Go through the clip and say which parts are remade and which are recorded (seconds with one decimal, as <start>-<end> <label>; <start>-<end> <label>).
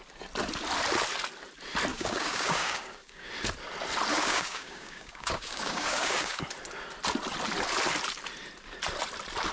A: 0.0-1.9 recorded; 1.9-3.3 remade; 3.3-4.1 recorded; 4.1-6.4 remade; 6.4-9.5 recorded